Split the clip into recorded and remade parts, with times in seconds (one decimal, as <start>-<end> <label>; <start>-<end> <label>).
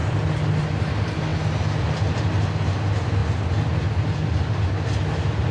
0.0-5.5 recorded